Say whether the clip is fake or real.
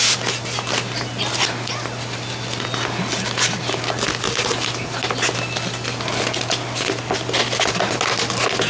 real